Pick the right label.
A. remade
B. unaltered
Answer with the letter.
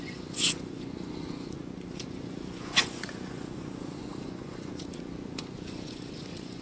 A